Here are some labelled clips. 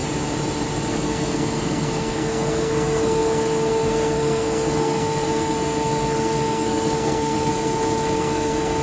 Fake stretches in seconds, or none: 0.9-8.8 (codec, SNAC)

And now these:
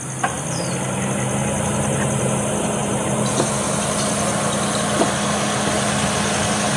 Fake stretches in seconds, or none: 2.8-3.5 (vocoder, BigVGAN v2)